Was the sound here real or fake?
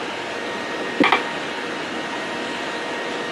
real